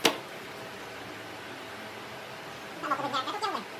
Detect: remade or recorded recorded